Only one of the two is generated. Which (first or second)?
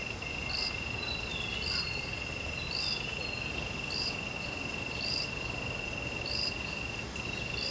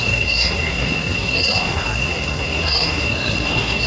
second